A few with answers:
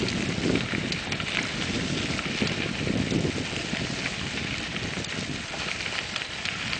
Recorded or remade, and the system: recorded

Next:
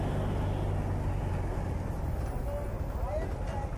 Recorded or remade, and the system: recorded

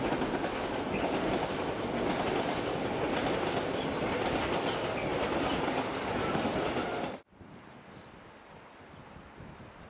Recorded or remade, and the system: recorded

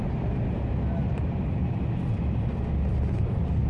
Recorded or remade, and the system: recorded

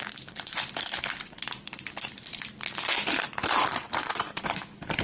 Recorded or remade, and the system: remade, vocoder, BigVGAN v2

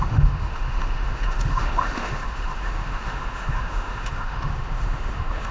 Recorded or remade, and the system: remade, autoencoder, DAC-VAE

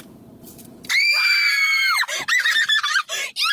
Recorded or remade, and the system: remade, vocoder, BigVGAN v2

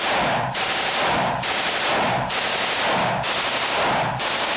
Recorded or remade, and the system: recorded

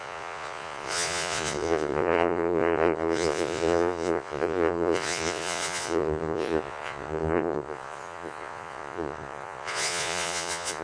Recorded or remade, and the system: remade, vocoder, Vocos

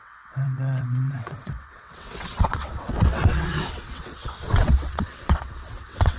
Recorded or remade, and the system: remade, vocoder, WaveNeXt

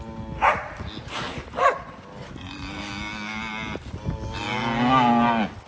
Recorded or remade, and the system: recorded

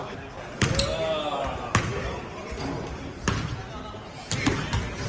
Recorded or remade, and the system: recorded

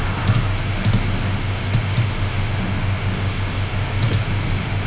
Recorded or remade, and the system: remade, autoencoder, DAC-VAE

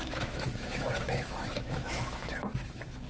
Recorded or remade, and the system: remade, autoencoder, DAC-VAE